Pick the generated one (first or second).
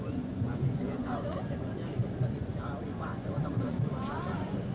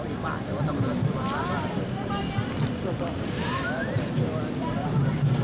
first